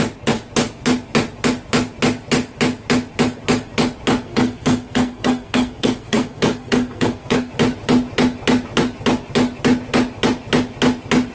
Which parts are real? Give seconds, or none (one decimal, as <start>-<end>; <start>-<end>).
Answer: 0.0-4.2; 7.5-11.3